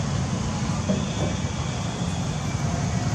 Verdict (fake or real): real